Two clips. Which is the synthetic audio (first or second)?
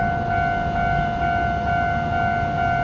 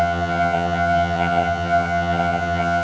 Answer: second